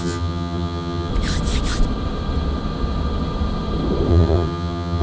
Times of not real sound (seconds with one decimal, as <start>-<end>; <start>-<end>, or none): 0.0-1.1; 4.1-5.0